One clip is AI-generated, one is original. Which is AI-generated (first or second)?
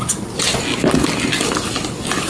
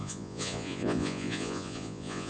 second